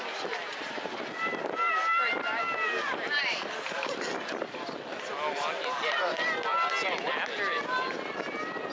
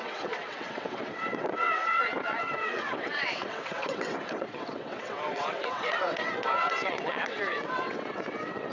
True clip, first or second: first